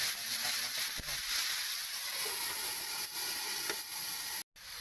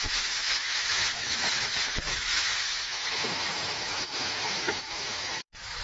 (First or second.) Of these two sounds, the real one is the first